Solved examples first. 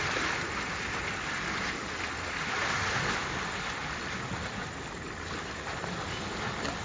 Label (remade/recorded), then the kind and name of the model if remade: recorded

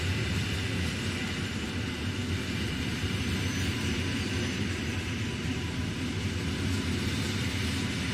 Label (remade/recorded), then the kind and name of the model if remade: recorded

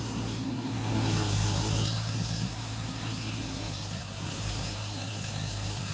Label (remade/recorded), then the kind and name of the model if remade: remade, codec, SNAC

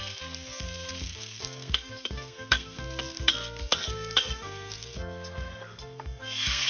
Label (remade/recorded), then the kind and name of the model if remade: remade, codec, SNAC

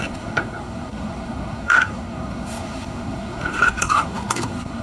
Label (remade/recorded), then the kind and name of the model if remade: remade, codec, SNAC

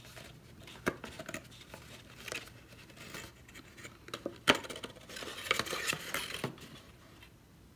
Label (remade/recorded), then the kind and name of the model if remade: recorded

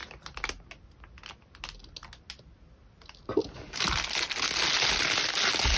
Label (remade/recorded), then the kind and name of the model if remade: recorded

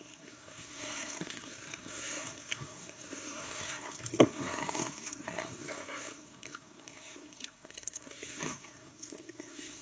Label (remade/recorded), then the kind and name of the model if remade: remade, codec, SNAC